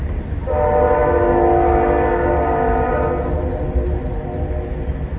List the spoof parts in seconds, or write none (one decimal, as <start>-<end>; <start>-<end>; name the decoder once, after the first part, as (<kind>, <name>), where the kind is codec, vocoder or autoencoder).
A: none